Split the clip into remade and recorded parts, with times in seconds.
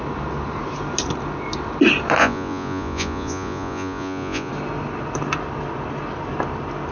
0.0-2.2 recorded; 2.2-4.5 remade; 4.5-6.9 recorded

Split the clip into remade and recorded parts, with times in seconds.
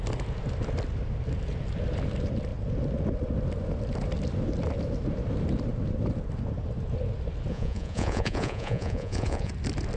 0.0-7.5 recorded; 7.5-9.5 remade; 9.5-10.0 recorded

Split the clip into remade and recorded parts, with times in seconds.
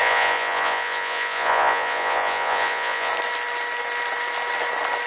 0.0-3.1 remade; 3.1-5.1 recorded